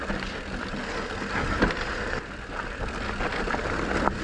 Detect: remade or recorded recorded